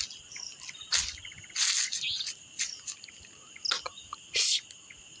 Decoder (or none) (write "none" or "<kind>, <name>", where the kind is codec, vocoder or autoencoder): none